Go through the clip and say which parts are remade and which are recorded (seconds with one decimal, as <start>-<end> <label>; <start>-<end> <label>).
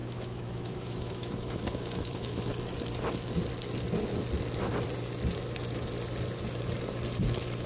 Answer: 0.0-2.5 remade; 2.5-7.7 recorded